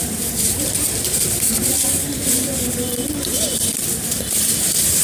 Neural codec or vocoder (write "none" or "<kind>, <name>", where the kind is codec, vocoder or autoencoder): vocoder, BigVGAN v2